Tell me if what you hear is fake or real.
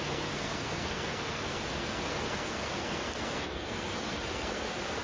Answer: fake